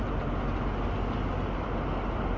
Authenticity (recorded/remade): recorded